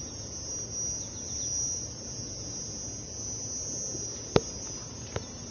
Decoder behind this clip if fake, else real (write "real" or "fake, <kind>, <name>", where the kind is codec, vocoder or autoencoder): real